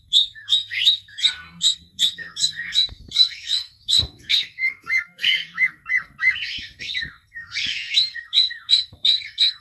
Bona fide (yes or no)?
no